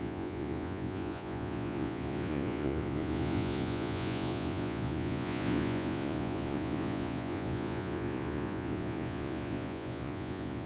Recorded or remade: remade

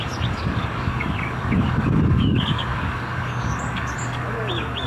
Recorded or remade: remade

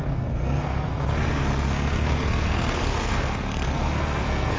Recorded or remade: remade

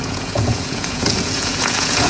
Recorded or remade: remade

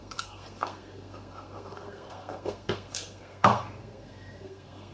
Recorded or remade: remade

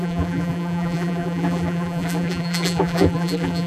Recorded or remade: remade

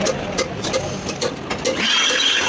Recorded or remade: recorded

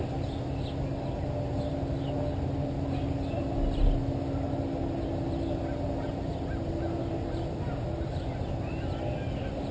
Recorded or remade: recorded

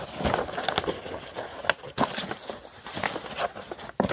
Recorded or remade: recorded